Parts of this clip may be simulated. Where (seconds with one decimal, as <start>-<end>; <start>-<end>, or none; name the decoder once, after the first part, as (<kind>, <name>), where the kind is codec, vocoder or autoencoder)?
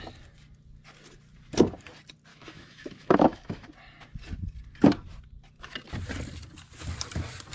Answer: 2.3-3.7 (autoencoder, DAC-VAE)